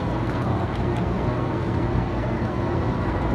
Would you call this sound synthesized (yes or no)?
yes